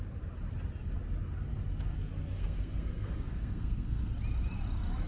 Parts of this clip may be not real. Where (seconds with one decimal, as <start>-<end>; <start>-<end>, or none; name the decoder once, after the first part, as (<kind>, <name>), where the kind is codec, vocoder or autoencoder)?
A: 2.4-4.1 (codec, SNAC)